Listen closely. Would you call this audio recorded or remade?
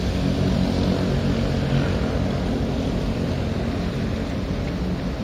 recorded